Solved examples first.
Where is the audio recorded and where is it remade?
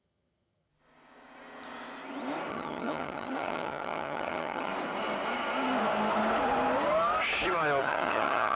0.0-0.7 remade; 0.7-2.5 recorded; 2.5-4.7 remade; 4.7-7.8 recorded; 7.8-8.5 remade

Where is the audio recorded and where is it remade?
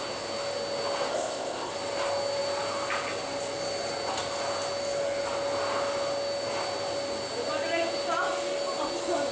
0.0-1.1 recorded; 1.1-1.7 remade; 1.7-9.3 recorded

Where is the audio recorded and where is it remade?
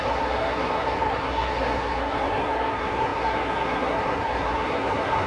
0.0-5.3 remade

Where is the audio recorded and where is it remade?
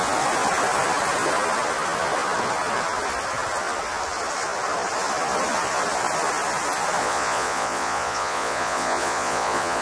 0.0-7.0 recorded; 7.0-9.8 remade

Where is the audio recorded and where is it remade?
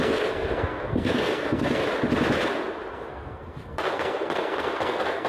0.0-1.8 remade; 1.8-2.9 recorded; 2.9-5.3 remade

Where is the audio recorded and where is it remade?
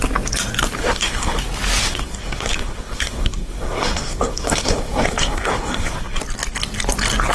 0.0-0.8 recorded; 0.8-1.4 remade; 1.4-1.8 recorded; 1.8-6.2 remade; 6.2-7.3 recorded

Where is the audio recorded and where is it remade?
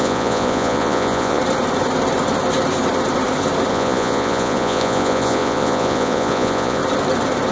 0.0-1.4 remade; 1.4-3.7 recorded; 3.7-6.8 remade; 6.8-7.5 recorded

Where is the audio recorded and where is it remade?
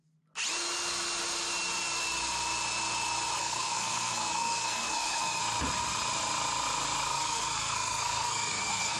0.0-3.4 recorded; 3.4-5.4 remade; 5.4-7.1 recorded; 7.1-9.0 remade